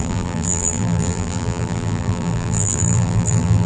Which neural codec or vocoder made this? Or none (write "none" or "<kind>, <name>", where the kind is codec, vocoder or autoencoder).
vocoder, BigVGAN v2